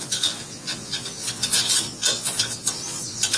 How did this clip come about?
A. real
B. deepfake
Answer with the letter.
B